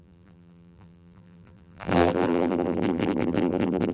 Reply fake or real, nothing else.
fake